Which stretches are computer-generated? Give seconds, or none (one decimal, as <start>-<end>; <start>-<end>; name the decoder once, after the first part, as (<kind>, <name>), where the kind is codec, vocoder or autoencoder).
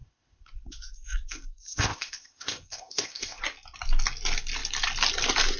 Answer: 0.0-3.4 (codec, ZipCodec)